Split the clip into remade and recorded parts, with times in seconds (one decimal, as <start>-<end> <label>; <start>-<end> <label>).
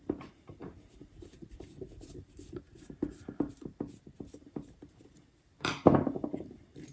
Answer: 0.0-6.9 remade